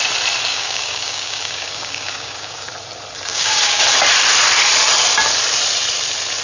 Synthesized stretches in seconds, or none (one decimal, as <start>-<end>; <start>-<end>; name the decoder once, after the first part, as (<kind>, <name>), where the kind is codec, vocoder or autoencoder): 0.5-2.7 (codec, DAC); 3.3-3.8